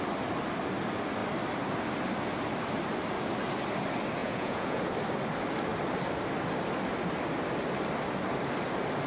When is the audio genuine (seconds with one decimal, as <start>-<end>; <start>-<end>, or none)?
0.0-4.2; 4.8-9.1